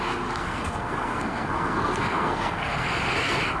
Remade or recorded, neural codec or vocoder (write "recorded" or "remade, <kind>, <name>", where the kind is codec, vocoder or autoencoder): remade, codec, SNAC